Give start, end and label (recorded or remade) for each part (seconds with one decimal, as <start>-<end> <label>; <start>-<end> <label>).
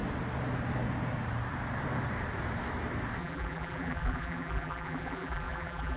0.0-3.2 recorded; 3.2-6.0 remade